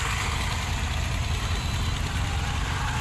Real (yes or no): yes